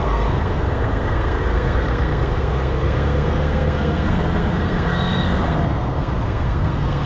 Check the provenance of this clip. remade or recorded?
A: remade